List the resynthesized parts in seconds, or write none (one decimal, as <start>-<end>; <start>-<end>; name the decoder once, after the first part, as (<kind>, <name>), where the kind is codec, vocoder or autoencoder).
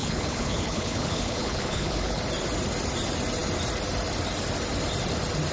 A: 0.0-2.2 (codec, HILCodec)